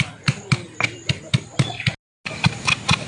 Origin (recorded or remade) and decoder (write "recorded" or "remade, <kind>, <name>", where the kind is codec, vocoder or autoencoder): recorded